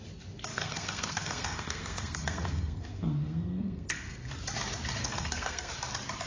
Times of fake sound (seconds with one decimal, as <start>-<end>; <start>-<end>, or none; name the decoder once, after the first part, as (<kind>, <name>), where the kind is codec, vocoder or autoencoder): 0.5-4.3 (codec, SNAC); 5.0-5.7